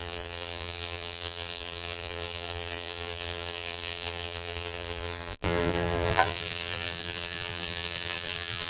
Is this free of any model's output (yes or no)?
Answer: no